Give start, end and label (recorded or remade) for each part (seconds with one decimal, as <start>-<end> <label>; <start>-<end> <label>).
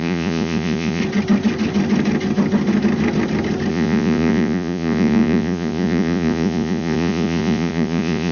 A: 0.0-1.0 remade; 1.0-3.7 recorded; 3.7-8.3 remade